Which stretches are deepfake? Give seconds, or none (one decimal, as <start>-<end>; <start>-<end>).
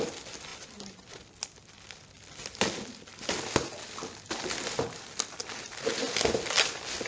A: 5.4-5.9